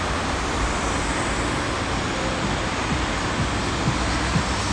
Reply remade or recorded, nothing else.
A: recorded